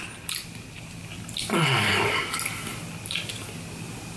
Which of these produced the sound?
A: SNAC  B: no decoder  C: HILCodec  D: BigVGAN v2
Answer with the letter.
B